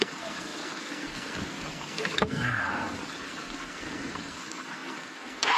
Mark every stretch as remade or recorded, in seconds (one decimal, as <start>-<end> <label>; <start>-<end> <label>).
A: 0.0-5.6 remade